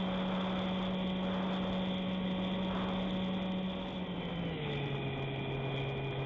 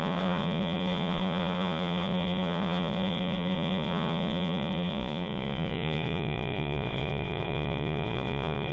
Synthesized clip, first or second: second